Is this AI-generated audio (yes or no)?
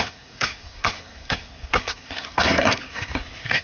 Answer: yes